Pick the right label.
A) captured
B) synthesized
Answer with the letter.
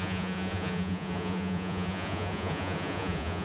B